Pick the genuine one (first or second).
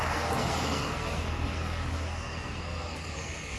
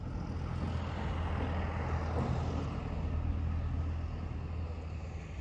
second